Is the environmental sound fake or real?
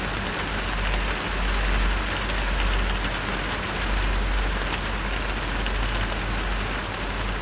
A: real